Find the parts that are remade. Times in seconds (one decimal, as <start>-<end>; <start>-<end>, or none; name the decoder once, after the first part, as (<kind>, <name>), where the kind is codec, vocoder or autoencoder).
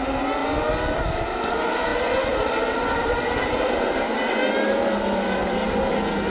1.9-4.5 (vocoder, BigVGAN v2)